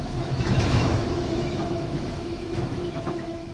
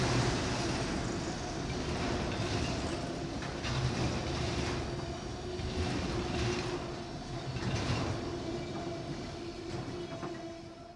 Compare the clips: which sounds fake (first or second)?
first